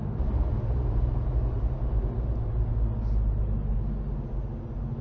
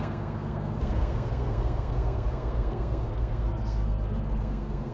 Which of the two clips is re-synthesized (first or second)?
second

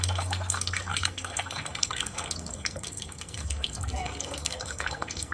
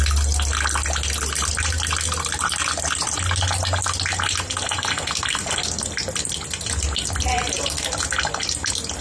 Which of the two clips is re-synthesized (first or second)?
first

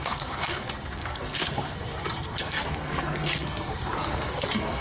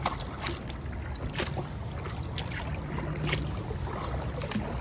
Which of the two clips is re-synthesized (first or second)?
first